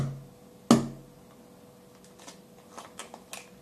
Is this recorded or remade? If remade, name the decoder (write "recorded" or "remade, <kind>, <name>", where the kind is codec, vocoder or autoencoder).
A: recorded